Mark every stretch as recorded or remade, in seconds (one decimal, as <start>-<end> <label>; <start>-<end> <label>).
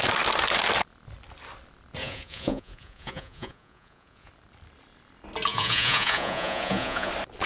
0.0-2.0 recorded; 2.0-4.3 remade; 4.3-5.5 recorded; 5.5-7.1 remade; 7.1-7.5 recorded